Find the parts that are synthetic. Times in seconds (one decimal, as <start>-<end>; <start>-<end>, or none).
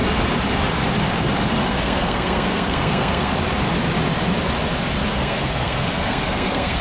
1.7-3.3; 5.1-6.8